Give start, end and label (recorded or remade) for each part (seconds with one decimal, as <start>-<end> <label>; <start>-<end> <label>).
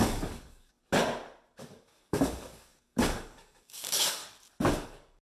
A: 0.0-0.8 remade; 0.8-1.6 recorded; 1.6-4.2 remade; 4.2-4.7 recorded; 4.7-5.3 remade